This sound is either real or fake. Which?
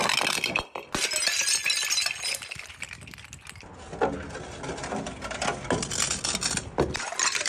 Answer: real